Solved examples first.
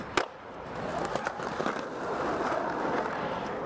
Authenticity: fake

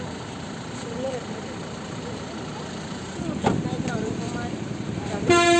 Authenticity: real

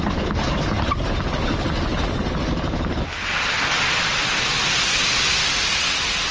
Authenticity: real